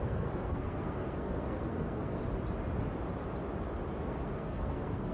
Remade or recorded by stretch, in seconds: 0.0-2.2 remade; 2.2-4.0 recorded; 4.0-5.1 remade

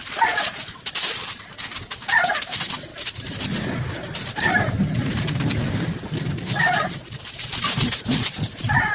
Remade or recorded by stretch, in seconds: 0.0-8.9 remade

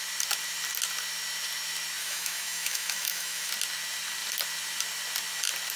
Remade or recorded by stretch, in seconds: 0.0-2.0 recorded; 2.0-3.5 remade; 3.5-5.8 recorded

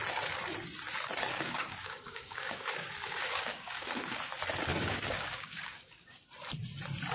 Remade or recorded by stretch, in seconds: 0.0-1.3 recorded; 1.3-4.2 remade; 4.2-4.7 recorded; 4.7-6.2 remade; 6.2-7.1 recorded

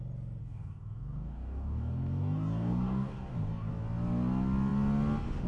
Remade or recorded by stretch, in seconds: 0.0-0.4 recorded; 0.4-3.7 remade; 3.7-5.5 recorded

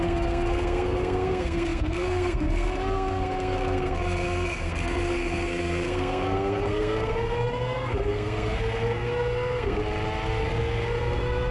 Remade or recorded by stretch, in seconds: 0.0-9.8 remade; 9.8-10.4 recorded; 10.4-11.5 remade

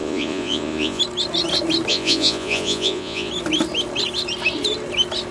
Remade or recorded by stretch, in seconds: 0.0-1.0 remade; 1.0-1.9 recorded; 1.9-3.3 remade; 3.3-5.3 recorded

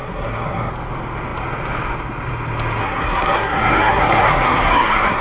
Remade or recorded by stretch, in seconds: 0.0-0.7 remade; 0.7-2.8 recorded; 2.8-5.2 remade